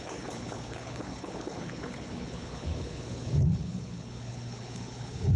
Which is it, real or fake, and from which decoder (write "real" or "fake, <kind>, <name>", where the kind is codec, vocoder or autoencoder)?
fake, codec, HILCodec